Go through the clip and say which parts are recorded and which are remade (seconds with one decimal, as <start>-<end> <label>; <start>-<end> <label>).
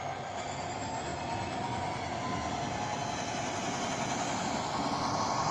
0.0-5.5 recorded